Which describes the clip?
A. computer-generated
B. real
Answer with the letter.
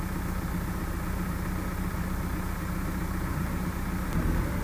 B